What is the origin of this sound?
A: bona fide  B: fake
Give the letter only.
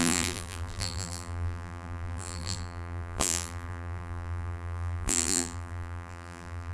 B